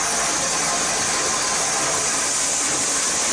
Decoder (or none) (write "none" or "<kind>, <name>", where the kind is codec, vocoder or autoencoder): none